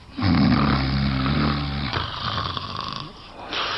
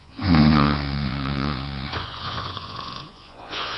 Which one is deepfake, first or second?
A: second